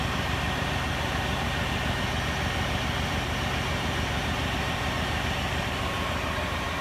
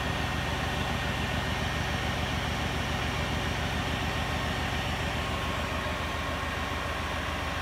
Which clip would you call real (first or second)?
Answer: second